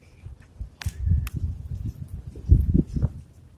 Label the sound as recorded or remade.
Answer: recorded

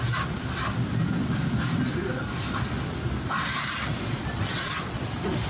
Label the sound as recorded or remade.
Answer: remade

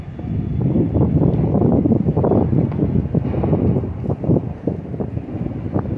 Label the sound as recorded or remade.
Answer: recorded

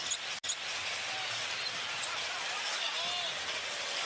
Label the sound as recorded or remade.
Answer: recorded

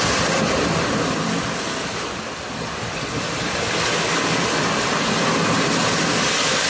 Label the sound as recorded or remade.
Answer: recorded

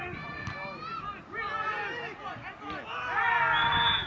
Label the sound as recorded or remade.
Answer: recorded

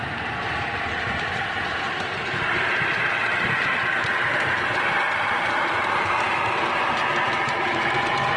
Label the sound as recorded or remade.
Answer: remade